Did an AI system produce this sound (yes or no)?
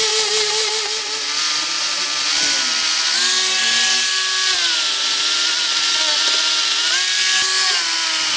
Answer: no